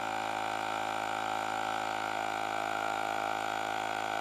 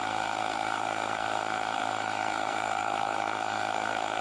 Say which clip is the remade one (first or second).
second